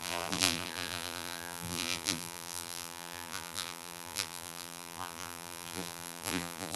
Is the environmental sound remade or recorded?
remade